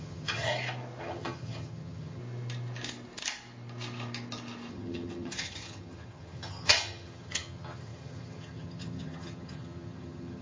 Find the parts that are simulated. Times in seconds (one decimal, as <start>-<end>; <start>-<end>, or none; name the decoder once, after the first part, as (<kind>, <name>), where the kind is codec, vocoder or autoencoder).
0.0-0.5 (vocoder, HiFi-GAN); 1.0-2.2; 4.7-10.4